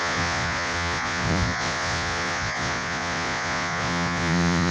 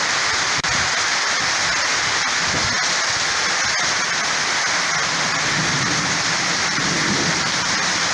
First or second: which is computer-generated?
first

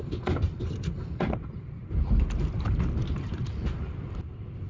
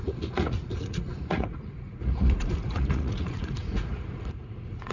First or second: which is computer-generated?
second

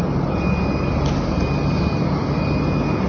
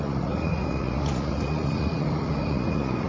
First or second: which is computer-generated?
second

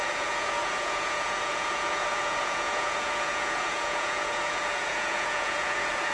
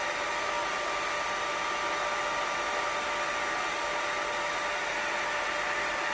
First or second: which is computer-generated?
first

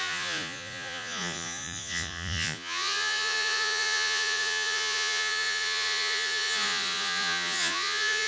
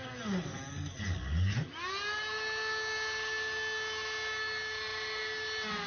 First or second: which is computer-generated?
first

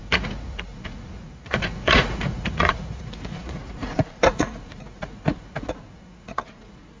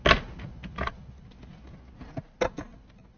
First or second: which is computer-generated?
first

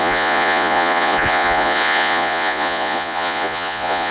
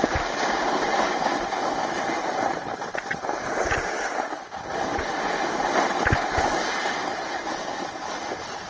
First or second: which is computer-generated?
first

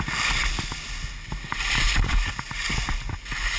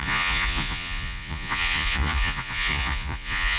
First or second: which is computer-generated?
second